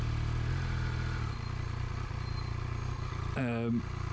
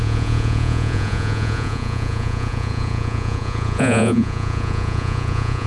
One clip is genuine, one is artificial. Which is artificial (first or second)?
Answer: second